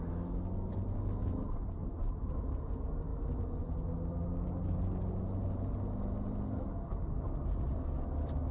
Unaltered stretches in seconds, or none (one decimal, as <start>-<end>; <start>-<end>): 0.0-1.8; 2.7-8.5